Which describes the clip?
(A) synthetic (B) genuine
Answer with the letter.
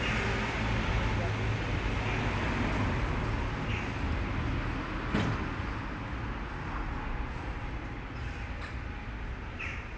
B